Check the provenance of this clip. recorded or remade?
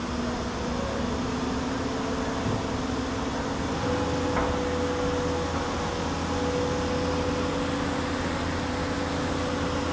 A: recorded